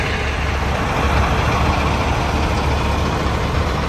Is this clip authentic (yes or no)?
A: yes